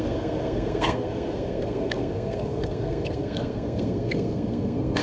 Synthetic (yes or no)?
yes